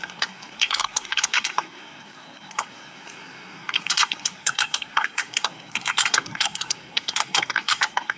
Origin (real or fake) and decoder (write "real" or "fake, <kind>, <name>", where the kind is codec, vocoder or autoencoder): fake, codec, SNAC